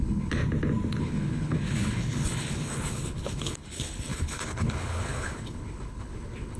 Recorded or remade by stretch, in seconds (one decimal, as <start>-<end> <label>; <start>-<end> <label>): 0.0-0.4 remade; 0.4-1.0 recorded; 1.0-6.6 remade